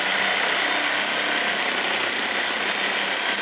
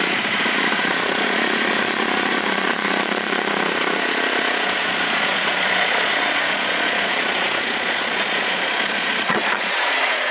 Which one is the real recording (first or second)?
first